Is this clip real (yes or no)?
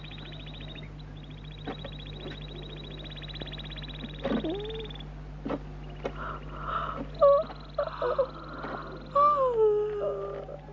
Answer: yes